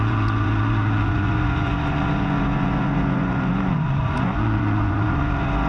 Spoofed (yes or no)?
yes